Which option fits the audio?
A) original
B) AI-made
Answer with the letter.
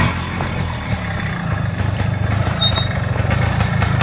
A